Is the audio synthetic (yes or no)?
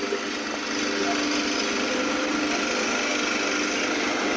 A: no